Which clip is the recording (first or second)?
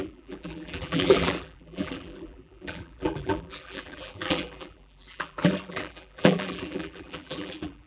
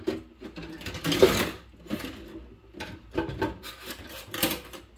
second